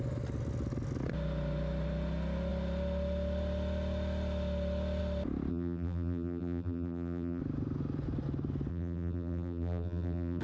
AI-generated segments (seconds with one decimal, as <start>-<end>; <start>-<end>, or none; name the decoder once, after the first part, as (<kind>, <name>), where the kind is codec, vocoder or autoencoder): 5.5-7.4 (vocoder, BigVGAN v2); 8.7-10.4